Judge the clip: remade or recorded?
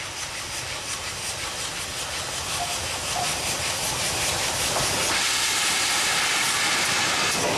recorded